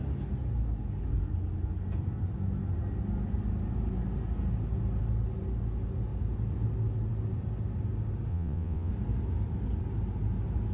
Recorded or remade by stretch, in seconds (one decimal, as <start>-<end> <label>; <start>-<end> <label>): 0.0-8.3 recorded; 8.3-8.9 remade; 8.9-10.7 recorded